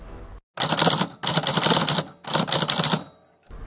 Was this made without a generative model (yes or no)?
yes